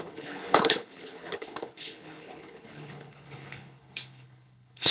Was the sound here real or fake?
fake